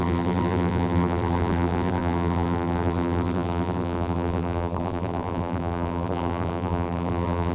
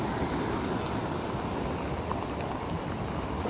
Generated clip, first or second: first